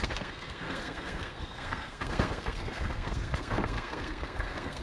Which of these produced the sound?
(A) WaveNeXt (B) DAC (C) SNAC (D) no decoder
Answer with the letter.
C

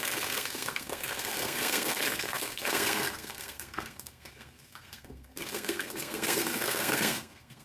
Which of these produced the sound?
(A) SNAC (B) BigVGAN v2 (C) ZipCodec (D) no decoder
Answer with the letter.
A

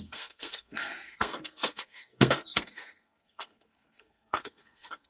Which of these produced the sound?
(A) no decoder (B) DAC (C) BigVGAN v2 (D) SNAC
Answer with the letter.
D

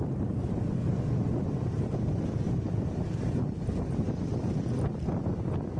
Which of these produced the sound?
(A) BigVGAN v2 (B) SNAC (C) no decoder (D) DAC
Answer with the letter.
C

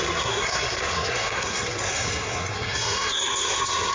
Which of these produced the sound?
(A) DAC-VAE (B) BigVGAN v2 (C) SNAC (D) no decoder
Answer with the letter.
C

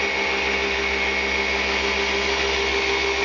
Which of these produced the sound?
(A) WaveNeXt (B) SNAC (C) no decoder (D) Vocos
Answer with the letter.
C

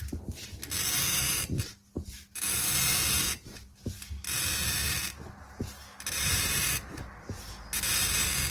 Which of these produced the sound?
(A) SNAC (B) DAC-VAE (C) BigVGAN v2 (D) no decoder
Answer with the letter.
D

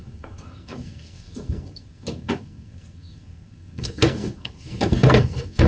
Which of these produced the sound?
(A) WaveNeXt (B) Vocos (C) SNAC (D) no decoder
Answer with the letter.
C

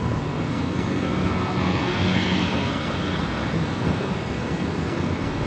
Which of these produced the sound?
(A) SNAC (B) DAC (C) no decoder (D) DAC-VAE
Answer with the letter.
A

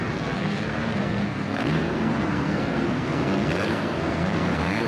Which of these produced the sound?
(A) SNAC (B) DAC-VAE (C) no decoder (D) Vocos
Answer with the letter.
A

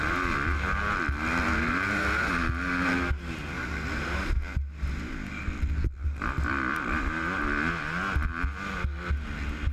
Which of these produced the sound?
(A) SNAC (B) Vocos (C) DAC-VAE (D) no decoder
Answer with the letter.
D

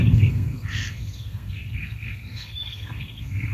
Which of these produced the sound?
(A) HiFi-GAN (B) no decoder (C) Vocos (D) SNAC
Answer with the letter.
D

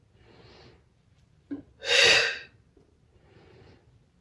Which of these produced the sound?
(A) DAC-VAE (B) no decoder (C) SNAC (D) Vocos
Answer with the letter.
B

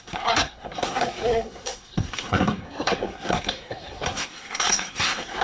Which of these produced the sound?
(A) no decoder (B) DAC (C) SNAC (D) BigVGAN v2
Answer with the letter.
C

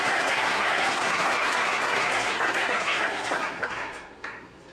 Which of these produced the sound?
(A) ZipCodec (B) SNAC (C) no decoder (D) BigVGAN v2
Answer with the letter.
B